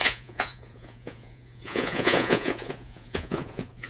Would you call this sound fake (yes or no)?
yes